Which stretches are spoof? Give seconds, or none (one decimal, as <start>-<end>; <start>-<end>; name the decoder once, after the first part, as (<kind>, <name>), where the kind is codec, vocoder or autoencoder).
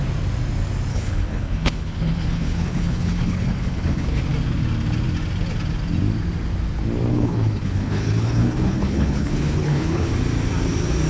0.9-4.2 (codec, HILCodec); 7.1-10.1